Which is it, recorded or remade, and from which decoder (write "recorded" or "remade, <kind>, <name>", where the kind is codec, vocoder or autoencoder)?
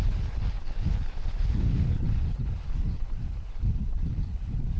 remade, codec, HILCodec